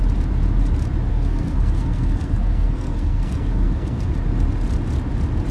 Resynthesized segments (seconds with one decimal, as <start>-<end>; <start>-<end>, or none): 1.1-4.1